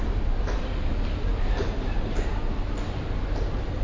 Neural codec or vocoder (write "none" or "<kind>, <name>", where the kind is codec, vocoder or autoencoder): none